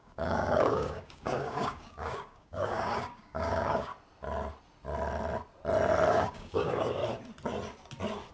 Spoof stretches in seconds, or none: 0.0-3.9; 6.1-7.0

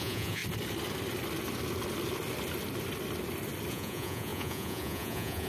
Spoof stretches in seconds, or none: 0.0-0.4; 3.7-5.5

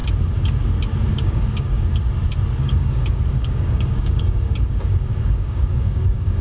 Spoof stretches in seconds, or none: 1.1-1.9; 2.6-6.4

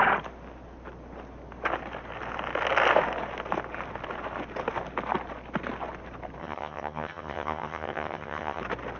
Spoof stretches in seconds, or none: 6.4-8.6

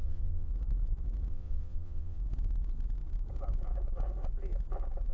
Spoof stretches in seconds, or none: 0.0-0.5; 1.3-2.2

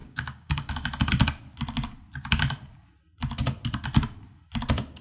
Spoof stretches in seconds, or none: 0.0-0.7

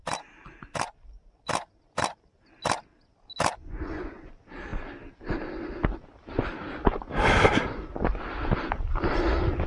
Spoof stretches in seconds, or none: 3.6-4.3

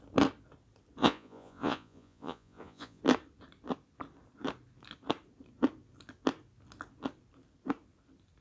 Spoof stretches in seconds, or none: 1.0-3.0